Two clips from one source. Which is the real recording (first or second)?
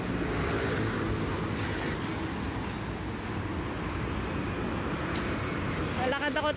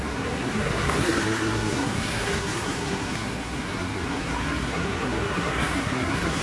first